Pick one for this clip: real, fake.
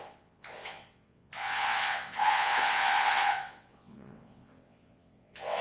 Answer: fake